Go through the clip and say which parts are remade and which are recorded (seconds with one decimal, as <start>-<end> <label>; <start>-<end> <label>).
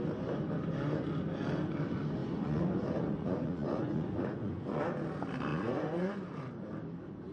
0.0-2.2 recorded; 2.2-4.8 remade; 4.8-5.5 recorded; 5.5-6.1 remade; 6.1-7.3 recorded